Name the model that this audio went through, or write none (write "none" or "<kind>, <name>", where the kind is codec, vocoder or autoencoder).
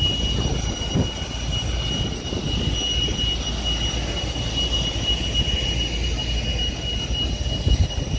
none